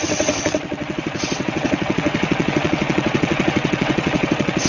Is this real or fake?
fake